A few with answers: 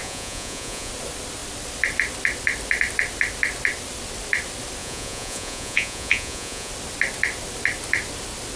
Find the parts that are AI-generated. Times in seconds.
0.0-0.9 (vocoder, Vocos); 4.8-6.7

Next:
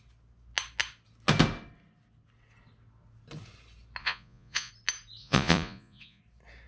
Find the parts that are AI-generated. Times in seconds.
4.0-4.7 (vocoder, Vocos); 5.2-6.2

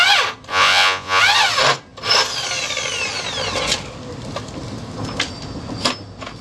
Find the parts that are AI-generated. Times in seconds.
0.5-1.2 (vocoder, Vocos)

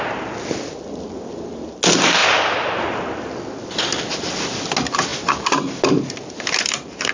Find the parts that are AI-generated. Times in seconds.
none